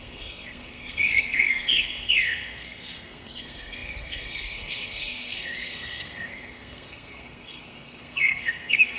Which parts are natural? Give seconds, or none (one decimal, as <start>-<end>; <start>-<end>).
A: none